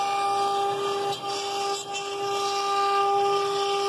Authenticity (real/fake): real